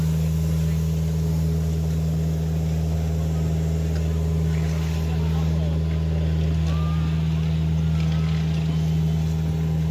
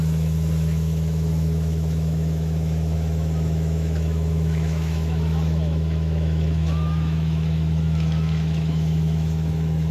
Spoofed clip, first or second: second